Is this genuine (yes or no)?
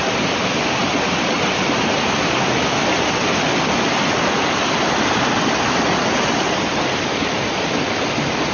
yes